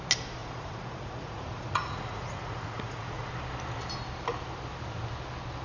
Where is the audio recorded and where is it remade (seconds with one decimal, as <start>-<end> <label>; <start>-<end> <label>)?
0.0-0.4 recorded; 0.4-3.3 remade; 3.3-5.6 recorded